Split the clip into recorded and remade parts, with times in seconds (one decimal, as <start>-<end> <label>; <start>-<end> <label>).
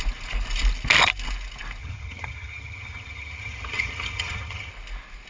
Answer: 0.0-1.8 recorded; 1.8-4.7 remade; 4.7-5.3 recorded